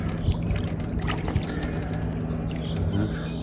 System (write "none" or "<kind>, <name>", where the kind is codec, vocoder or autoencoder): none